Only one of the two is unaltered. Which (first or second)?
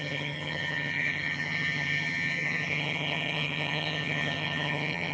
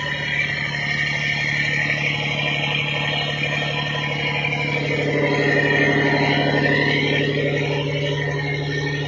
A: second